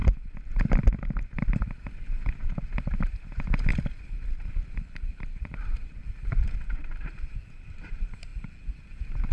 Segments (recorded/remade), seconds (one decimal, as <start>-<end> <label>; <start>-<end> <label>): 0.0-3.0 recorded; 3.0-3.7 remade; 3.7-4.6 recorded; 4.6-6.0 remade; 6.0-6.8 recorded; 6.8-8.3 remade; 8.3-9.3 recorded